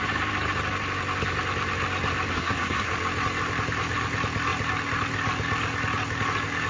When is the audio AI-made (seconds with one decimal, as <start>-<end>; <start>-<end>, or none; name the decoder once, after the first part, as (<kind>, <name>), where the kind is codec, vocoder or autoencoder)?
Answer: 2.3-2.9 (codec, SNAC)